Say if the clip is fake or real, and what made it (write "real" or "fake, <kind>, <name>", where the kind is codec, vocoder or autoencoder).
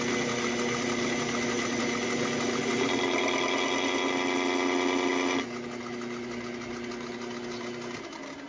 real